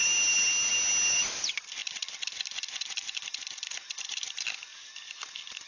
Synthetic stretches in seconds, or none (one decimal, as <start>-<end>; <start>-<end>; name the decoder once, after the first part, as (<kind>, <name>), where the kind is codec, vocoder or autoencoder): none